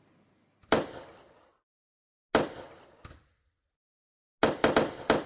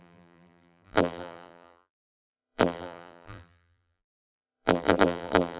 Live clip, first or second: first